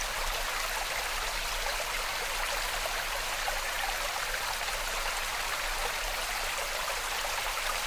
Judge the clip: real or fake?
real